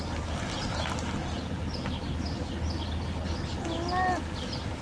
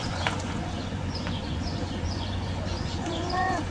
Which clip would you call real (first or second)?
first